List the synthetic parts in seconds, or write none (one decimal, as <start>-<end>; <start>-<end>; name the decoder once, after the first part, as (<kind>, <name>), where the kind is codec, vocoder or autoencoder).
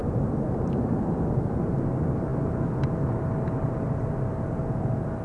0.0-0.8 (vocoder, BigVGAN v2)